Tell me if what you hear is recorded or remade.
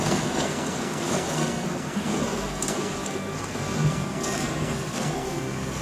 remade